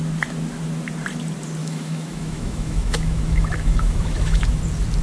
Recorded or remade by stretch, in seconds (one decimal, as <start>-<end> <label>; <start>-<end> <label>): 0.0-1.6 recorded; 1.6-4.6 remade; 4.6-5.0 recorded